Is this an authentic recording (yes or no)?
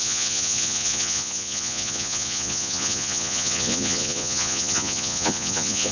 no